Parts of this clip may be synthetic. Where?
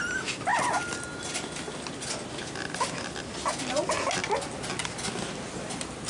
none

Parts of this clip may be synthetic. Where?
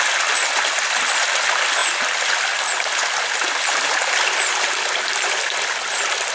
none